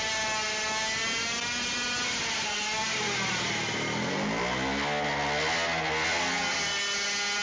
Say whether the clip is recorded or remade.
recorded